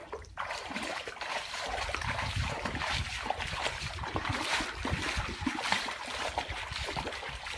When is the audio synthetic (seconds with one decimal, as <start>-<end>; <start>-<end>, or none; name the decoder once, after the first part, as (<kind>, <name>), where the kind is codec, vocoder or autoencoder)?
0.0-4.6 (vocoder, BigVGAN v2)